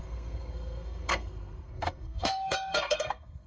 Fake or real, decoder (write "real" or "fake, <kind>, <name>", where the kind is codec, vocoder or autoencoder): fake, codec, SNAC